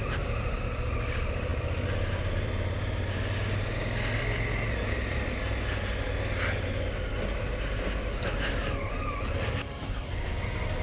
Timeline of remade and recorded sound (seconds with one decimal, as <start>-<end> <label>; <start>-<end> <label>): 0.0-8.6 recorded; 8.6-10.1 remade; 10.1-10.8 recorded